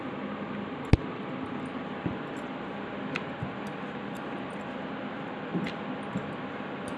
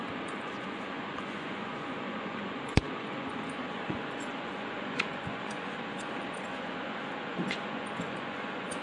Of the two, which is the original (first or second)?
first